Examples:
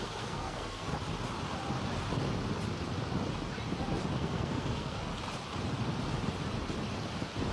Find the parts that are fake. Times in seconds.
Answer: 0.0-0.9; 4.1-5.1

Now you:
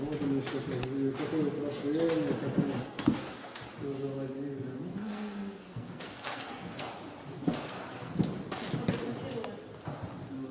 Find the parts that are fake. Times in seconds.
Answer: 2.8-3.6; 4.9-6.9; 7.4-8.2

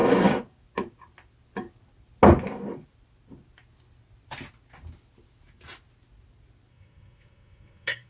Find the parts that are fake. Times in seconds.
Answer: 6.7-8.1

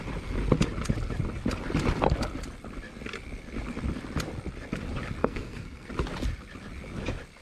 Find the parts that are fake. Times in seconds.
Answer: 5.2-5.9

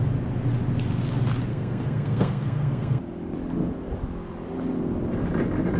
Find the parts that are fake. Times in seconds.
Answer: 1.5-3.0